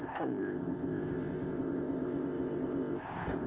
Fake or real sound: fake